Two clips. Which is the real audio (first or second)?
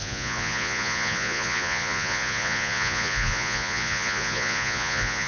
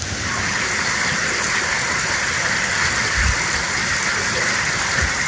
second